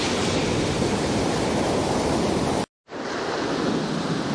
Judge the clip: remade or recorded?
recorded